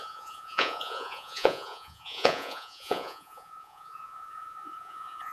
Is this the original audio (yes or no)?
no